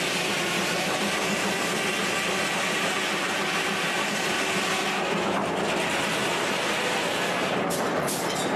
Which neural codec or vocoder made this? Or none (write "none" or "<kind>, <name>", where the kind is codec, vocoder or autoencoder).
none